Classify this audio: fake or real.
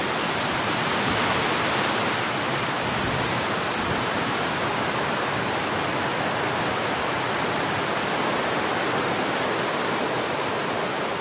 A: real